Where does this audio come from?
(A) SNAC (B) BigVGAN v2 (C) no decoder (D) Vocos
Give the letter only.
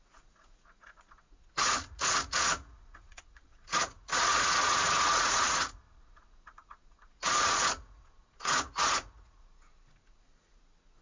D